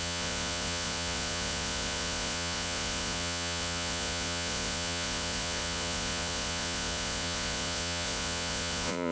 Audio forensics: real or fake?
fake